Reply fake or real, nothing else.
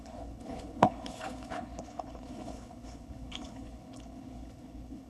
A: fake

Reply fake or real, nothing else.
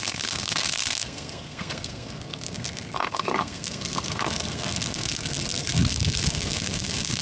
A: fake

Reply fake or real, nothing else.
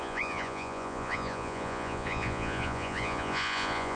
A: fake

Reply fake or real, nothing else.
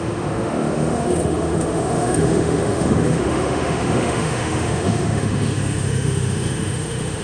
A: fake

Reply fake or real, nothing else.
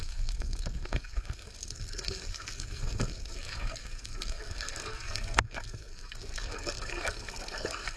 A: fake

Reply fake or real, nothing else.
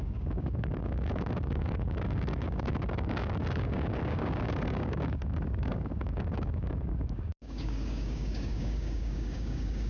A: fake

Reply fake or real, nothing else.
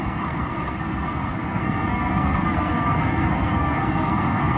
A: fake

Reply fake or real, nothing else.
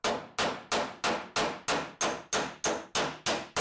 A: real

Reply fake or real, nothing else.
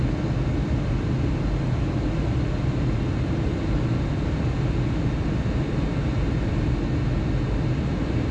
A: real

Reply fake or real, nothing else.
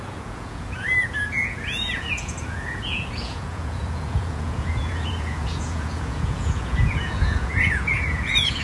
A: fake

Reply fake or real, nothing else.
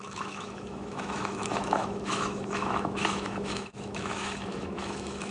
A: fake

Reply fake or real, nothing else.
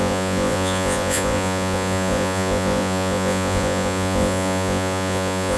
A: fake